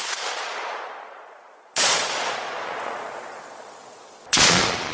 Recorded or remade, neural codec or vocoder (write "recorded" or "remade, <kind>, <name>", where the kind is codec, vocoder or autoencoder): remade, vocoder, Vocos